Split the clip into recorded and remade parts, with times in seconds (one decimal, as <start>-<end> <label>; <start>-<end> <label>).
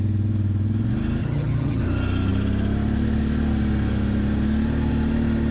0.0-1.2 recorded; 1.2-1.8 remade; 1.8-5.5 recorded